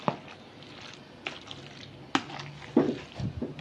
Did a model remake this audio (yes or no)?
no